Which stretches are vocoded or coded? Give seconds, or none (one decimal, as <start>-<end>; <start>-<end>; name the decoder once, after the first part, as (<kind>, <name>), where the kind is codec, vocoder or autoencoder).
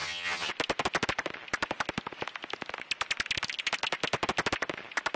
0.0-0.5 (vocoder, HiFi-GAN)